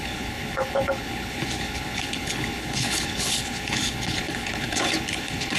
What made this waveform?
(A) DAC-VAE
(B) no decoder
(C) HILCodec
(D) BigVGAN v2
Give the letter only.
C